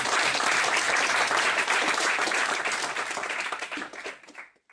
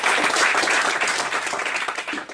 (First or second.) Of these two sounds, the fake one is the first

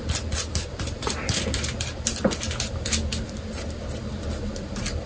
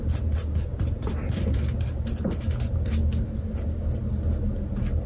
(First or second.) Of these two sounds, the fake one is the first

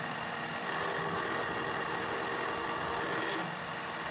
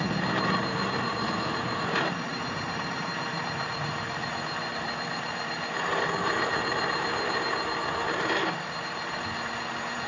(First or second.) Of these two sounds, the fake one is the second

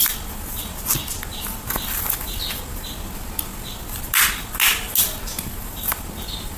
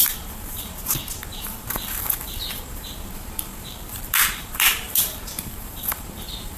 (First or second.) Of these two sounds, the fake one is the second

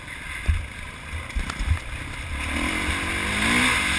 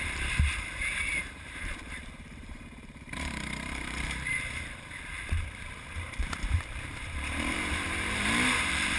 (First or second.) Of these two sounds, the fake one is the second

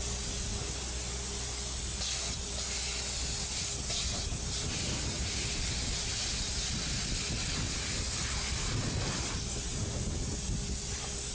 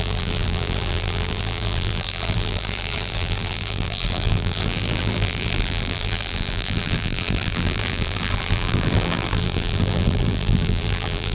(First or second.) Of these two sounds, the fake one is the second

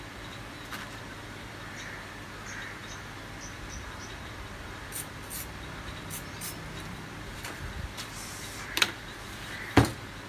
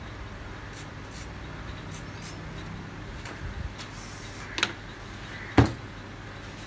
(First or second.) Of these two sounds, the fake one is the first